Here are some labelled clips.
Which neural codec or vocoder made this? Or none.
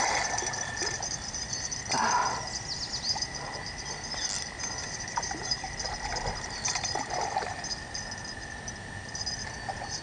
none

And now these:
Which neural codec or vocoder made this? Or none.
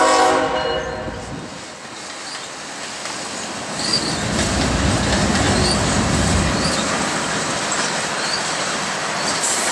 none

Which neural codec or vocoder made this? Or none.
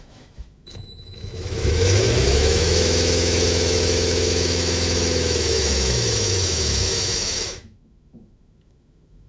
autoencoder, DAC-VAE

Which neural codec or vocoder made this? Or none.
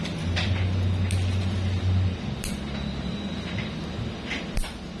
none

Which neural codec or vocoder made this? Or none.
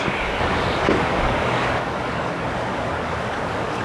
codec, DAC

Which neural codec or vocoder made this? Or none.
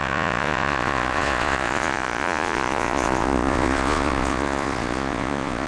vocoder, Vocos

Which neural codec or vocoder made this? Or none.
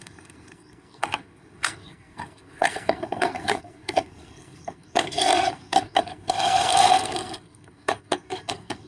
codec, SNAC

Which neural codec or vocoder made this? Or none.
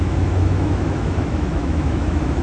autoencoder, DAC-VAE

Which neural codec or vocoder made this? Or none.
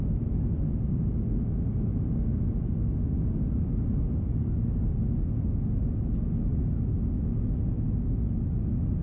none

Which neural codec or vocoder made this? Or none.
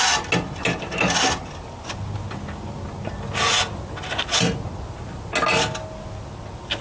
none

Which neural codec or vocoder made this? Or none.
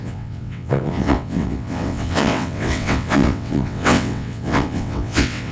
vocoder, WaveNeXt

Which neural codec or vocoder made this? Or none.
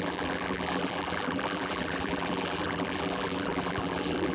vocoder, BigVGAN v2